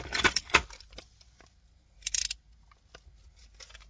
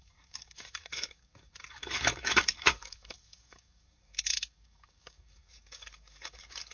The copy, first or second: second